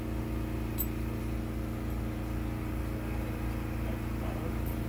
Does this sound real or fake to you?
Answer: real